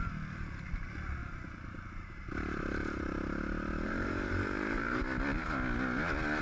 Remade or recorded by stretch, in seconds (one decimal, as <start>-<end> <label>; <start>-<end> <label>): 0.0-1.2 recorded; 1.2-5.0 remade; 5.0-6.4 recorded